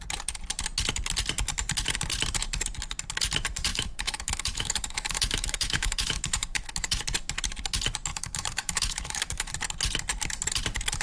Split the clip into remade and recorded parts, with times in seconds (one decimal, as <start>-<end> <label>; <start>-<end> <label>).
0.0-3.7 recorded; 3.7-7.0 remade; 7.0-8.1 recorded; 8.1-9.5 remade; 9.5-11.0 recorded